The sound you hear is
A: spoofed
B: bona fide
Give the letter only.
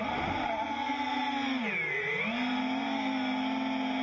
B